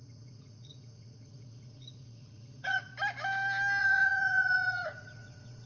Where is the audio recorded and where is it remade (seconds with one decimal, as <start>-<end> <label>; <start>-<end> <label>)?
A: 0.0-2.9 remade; 2.9-3.8 recorded; 3.8-5.7 remade